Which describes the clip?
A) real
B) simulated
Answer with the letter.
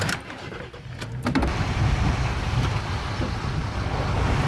A